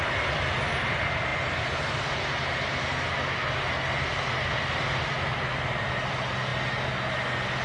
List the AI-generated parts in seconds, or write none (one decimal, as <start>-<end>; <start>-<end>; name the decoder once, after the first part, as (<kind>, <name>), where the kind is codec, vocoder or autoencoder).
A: none